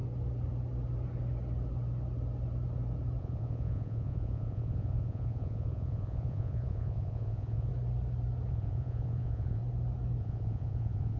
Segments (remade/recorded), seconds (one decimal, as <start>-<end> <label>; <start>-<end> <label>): 0.0-3.2 recorded; 3.2-7.7 remade; 7.7-8.5 recorded; 8.5-9.6 remade; 9.6-10.2 recorded; 10.2-11.2 remade